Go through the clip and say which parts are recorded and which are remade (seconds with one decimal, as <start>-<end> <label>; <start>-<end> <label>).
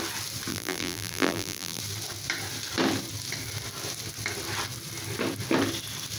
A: 0.0-0.5 recorded; 0.5-1.8 remade; 1.8-6.2 recorded